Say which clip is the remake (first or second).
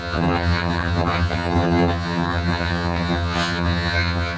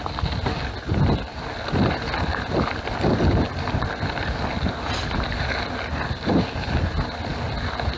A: first